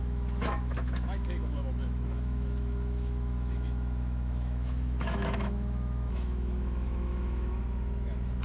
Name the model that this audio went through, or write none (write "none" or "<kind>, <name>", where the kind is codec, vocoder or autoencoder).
autoencoder, DAC-VAE